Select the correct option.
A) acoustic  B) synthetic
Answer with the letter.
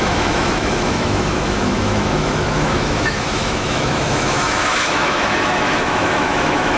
B